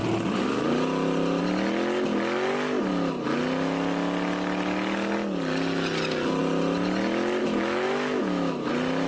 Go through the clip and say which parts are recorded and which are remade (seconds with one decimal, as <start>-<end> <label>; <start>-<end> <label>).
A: 0.0-7.4 recorded; 7.4-8.7 remade; 8.7-9.1 recorded